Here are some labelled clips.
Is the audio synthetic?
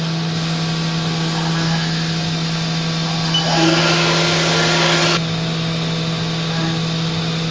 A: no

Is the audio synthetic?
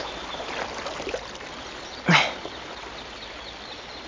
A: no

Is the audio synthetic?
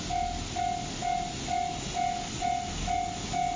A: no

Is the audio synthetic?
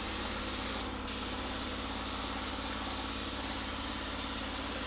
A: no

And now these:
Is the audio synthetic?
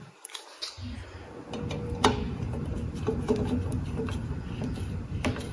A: no